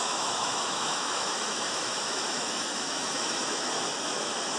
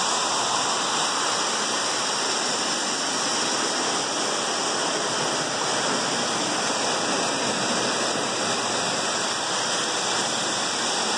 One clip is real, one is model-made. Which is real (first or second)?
second